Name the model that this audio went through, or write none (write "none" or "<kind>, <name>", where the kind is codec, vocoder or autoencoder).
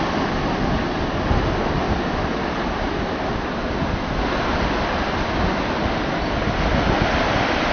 none